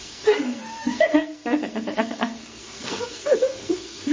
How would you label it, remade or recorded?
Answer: remade